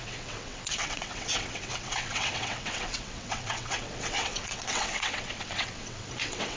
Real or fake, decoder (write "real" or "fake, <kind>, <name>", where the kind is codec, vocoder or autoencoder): fake, vocoder, WaveNeXt